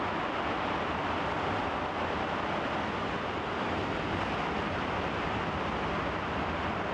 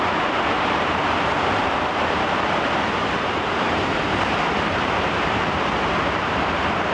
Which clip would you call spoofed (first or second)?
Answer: second